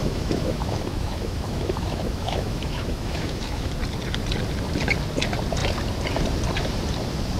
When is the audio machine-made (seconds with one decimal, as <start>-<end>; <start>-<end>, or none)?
0.0-3.7